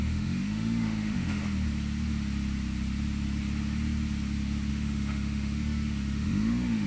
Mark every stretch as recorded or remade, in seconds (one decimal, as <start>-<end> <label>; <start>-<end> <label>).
0.0-1.4 remade; 1.4-4.7 recorded; 4.7-6.9 remade